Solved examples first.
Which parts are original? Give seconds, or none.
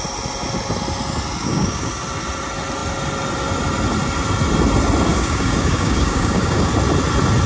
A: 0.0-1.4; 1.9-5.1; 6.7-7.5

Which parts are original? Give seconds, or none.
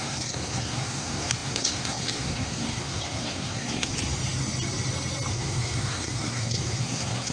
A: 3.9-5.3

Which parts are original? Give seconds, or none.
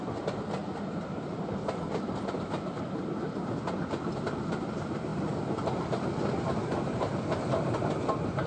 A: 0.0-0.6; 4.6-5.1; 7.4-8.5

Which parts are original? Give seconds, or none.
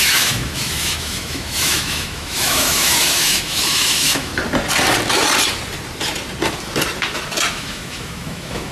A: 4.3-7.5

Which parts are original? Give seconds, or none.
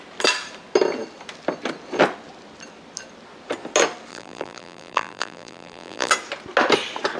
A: 0.0-4.1; 6.1-7.2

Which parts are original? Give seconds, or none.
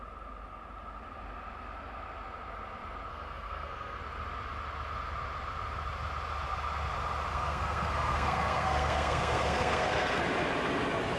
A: 0.0-3.1; 4.0-7.3; 10.2-11.2